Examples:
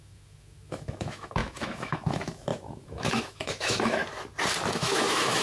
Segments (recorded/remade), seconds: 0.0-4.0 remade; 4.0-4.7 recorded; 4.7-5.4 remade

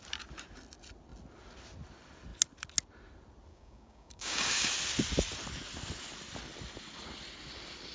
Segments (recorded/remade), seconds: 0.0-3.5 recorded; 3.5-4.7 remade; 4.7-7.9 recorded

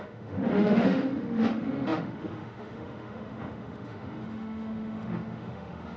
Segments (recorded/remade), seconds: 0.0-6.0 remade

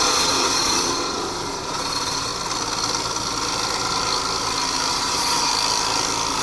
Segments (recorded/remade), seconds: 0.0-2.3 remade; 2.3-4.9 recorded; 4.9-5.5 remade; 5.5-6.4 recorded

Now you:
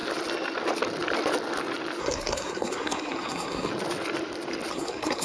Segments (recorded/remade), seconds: 0.0-2.0 recorded; 2.0-3.7 remade; 3.7-4.7 recorded; 4.7-5.2 remade

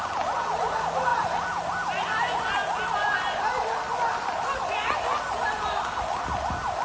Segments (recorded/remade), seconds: 0.0-2.6 recorded; 2.6-3.4 remade; 3.4-6.8 recorded

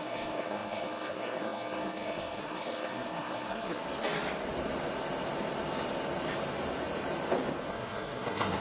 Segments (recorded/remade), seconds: 0.0-3.8 remade; 3.8-7.7 recorded; 7.7-8.6 remade